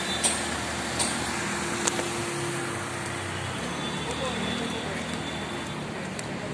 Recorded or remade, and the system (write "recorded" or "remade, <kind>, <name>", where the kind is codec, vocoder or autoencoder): recorded